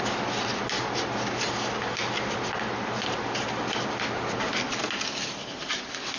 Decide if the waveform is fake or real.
real